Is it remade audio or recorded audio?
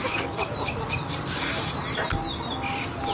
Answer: recorded